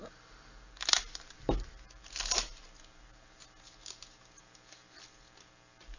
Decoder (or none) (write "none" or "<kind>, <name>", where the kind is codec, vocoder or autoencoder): none